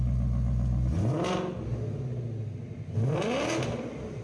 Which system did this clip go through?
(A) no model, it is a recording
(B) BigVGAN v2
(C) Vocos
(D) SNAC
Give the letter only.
A